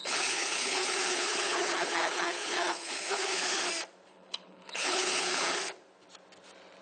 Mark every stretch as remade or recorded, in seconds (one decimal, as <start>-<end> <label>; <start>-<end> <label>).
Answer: 0.0-3.6 remade; 3.6-4.1 recorded; 4.1-5.4 remade; 5.4-6.8 recorded